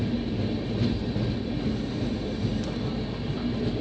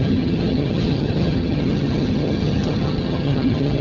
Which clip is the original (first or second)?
first